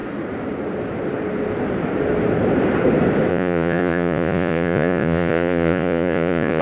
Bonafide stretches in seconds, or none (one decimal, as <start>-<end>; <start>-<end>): 0.0-3.3